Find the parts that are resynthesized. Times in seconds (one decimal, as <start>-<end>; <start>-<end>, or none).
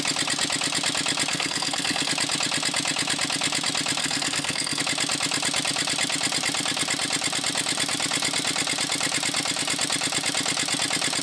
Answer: 1.3-2.1; 4.0-4.8